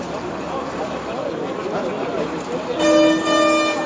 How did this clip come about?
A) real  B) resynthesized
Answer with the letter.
A